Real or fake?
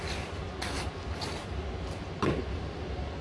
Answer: real